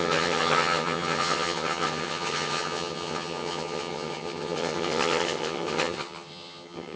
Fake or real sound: fake